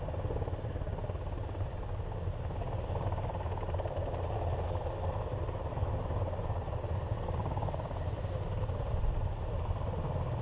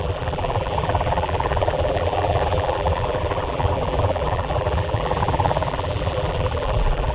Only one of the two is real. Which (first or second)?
first